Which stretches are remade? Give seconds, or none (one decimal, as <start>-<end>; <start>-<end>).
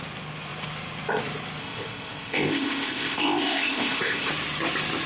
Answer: 1.6-4.3